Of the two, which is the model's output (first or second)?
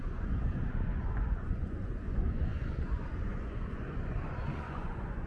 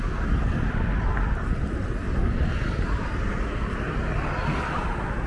first